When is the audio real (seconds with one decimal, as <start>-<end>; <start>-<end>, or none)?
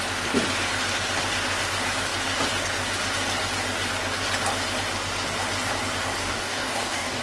0.0-6.2